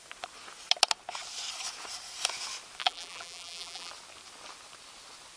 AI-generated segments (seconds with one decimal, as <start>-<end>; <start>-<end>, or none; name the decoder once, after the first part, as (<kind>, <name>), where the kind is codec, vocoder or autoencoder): 2.8-3.9 (vocoder, BigVGAN v2)